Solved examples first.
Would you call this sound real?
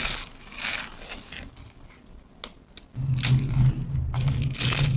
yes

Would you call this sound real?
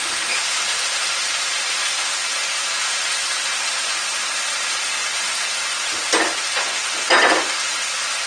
yes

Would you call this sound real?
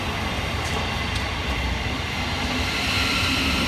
yes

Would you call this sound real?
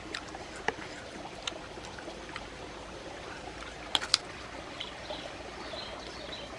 no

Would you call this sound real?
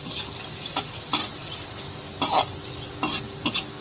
yes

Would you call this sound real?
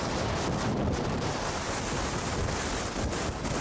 yes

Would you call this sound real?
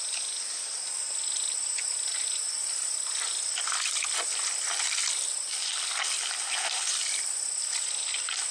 yes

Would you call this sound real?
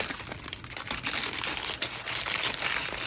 yes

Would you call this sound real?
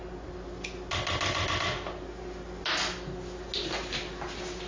yes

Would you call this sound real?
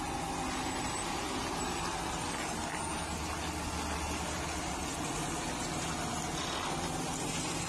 yes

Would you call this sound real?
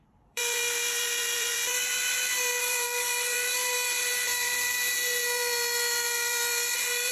no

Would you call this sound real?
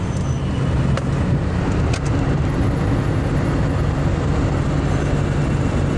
yes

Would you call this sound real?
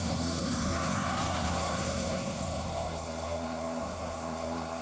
no